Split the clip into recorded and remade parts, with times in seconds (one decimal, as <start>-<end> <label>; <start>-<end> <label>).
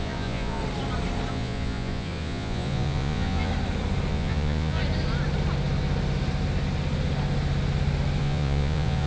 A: 0.0-0.6 remade; 0.6-1.3 recorded; 1.3-3.5 remade; 3.5-4.1 recorded; 4.1-4.8 remade; 4.8-8.2 recorded; 8.2-9.1 remade